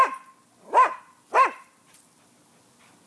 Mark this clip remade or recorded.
recorded